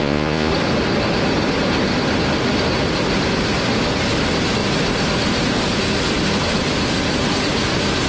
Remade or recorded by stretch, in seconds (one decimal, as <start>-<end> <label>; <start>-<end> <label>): 0.0-0.5 remade; 0.5-8.1 recorded